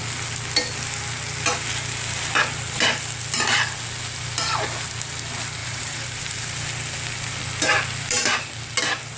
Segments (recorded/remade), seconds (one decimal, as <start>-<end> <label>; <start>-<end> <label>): 0.0-5.6 recorded; 5.6-6.2 remade; 6.2-9.2 recorded